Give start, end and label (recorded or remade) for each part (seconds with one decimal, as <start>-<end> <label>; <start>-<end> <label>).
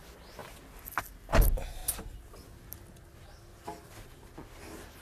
0.0-5.0 recorded